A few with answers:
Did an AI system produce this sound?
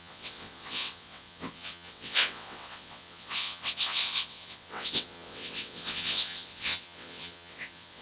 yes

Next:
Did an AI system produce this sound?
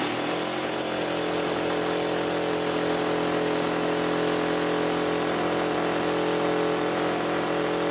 no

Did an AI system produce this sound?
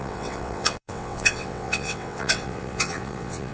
yes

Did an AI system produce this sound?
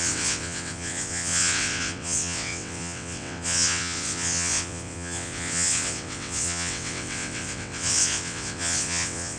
yes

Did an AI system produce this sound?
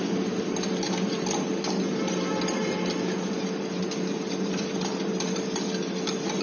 no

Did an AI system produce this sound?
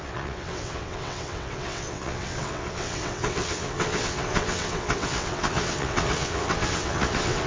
yes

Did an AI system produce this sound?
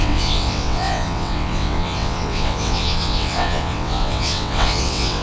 yes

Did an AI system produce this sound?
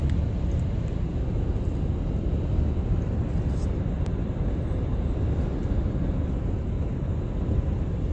no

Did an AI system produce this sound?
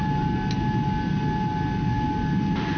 no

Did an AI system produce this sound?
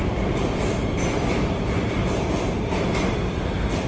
no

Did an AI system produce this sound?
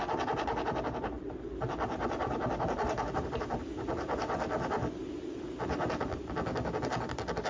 no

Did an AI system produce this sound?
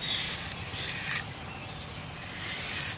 no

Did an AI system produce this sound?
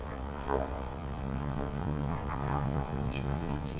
yes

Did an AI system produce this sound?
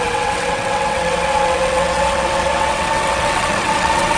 yes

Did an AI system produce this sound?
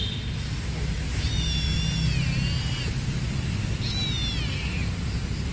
no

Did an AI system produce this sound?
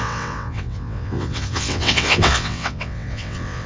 yes